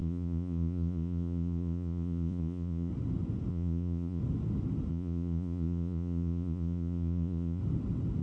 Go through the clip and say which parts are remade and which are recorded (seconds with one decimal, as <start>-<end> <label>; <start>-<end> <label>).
0.0-2.9 remade; 2.9-3.5 recorded; 3.5-4.2 remade; 4.2-4.9 recorded; 4.9-7.6 remade; 7.6-8.2 recorded

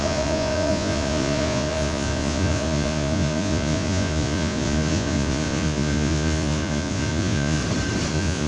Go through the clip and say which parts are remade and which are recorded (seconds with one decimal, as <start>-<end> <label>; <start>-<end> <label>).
0.0-7.6 remade; 7.6-8.1 recorded; 8.1-8.5 remade

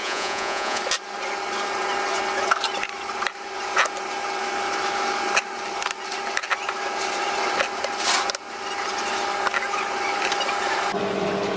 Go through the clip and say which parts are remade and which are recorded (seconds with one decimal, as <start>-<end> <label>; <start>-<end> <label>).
0.0-0.8 remade; 0.8-11.6 recorded

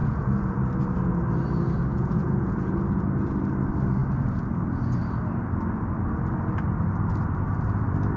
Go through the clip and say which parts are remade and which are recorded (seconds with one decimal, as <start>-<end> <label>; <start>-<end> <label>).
0.0-0.6 remade; 0.6-1.9 recorded; 1.9-2.7 remade; 2.7-8.2 recorded

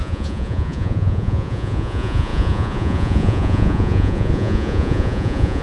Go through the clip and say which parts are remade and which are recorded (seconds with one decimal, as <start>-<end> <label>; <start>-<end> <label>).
0.0-5.6 remade

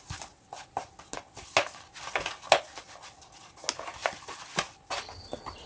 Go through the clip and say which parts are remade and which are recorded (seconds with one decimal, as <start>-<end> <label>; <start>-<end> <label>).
0.0-5.7 recorded

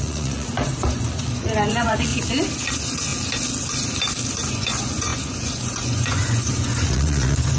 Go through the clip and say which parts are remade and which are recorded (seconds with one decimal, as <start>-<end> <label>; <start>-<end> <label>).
0.0-2.1 remade; 2.1-2.7 recorded; 2.7-3.1 remade; 3.1-4.5 recorded; 4.5-7.6 remade

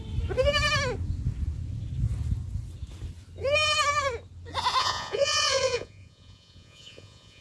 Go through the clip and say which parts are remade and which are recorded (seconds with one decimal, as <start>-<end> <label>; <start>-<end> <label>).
0.0-4.8 recorded; 4.8-7.4 remade